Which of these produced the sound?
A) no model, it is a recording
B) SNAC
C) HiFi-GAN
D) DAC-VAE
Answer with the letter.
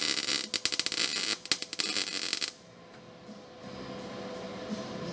A